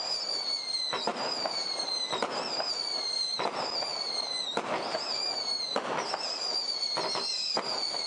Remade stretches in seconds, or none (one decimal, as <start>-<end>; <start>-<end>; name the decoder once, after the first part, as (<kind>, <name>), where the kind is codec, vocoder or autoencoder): 1.1-2.2 (vocoder, BigVGAN v2)